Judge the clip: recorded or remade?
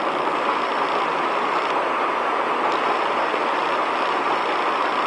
recorded